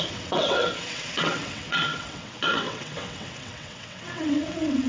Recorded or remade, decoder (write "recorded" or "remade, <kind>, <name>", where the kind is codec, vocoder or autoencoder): remade, vocoder, WaveNeXt